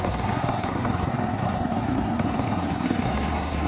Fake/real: fake